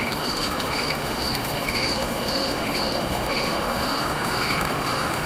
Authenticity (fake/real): fake